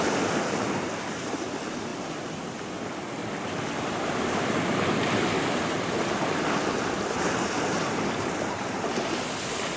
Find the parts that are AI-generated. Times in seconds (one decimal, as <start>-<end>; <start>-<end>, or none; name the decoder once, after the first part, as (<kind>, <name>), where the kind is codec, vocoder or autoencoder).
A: none